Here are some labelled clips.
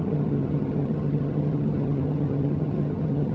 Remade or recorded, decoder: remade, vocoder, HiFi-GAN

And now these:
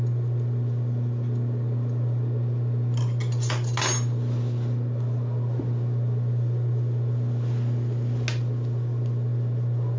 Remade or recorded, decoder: recorded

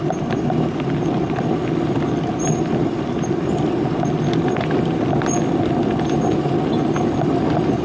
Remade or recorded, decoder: recorded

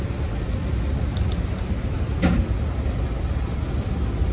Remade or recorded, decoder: recorded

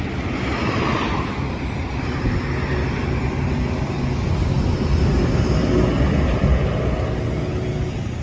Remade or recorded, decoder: recorded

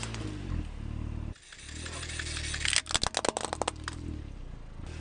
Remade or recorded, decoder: recorded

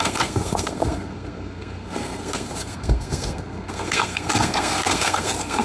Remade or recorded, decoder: remade, codec, SNAC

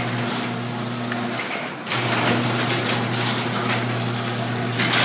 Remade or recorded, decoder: recorded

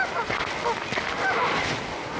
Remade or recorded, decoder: recorded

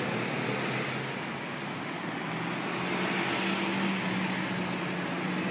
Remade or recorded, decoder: recorded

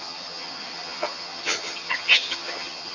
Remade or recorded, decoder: remade, vocoder, HiFi-GAN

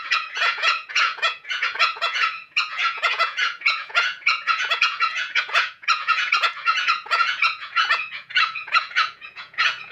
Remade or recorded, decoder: remade, vocoder, Vocos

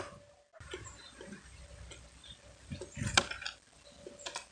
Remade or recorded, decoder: recorded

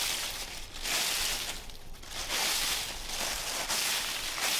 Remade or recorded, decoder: recorded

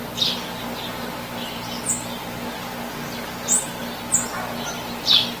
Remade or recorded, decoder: recorded